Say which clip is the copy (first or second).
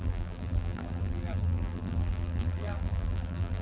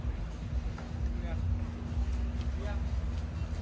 first